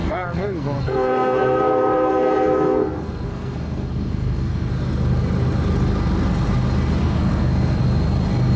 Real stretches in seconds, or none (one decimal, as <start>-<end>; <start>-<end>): 4.7-7.0; 7.8-8.6

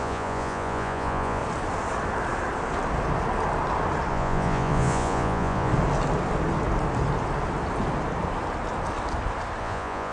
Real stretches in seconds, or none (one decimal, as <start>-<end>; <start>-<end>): 1.4-4.1; 5.7-9.6

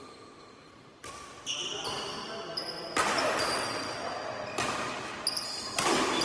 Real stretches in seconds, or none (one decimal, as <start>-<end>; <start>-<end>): 0.0-6.2

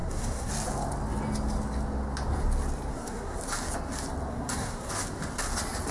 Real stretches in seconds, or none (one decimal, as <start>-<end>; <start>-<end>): 0.5-2.9; 3.4-4.3; 4.9-5.9

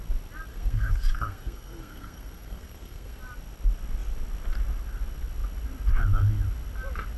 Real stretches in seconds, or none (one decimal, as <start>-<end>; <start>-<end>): 0.0-0.5; 3.2-7.2